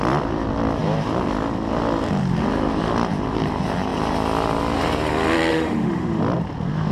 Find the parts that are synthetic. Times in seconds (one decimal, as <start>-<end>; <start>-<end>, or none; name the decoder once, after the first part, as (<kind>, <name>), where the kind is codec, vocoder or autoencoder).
5.5-6.2 (autoencoder, DAC-VAE)